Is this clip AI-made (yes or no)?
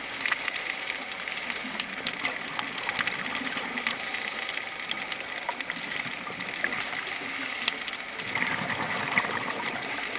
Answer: no